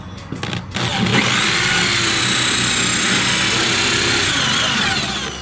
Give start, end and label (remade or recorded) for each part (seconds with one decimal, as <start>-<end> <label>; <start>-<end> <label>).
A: 0.0-5.4 recorded